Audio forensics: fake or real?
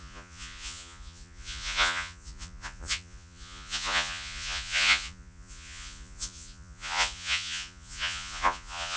fake